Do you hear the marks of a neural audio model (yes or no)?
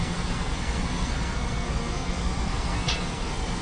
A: yes